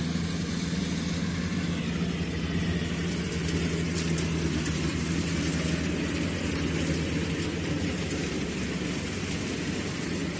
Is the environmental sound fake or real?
real